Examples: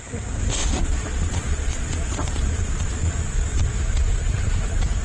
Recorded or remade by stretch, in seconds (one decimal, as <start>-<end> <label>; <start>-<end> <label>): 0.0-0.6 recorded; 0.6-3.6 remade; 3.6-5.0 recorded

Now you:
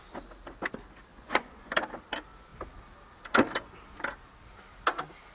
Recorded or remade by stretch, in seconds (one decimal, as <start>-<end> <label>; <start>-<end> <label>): 0.0-1.1 recorded; 1.1-1.7 remade; 1.7-5.3 recorded

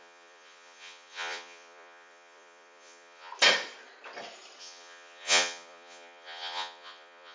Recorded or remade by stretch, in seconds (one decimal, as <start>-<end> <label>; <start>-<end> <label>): 0.0-3.3 remade; 3.3-4.6 recorded; 4.6-7.3 remade

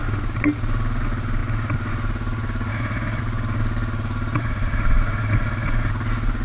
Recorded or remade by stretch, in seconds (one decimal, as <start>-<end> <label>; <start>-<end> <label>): 0.0-2.7 recorded; 2.7-3.2 remade; 3.2-4.4 recorded; 4.4-5.9 remade; 5.9-6.4 recorded

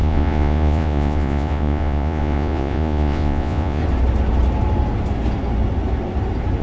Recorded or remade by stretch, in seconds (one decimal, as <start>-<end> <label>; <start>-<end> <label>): 0.0-3.8 remade; 3.8-6.6 recorded